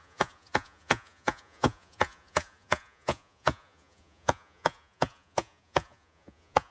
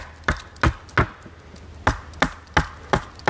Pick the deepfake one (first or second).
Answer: first